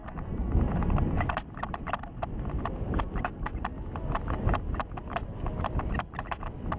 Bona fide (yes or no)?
yes